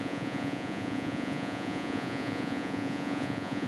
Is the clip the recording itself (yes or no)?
no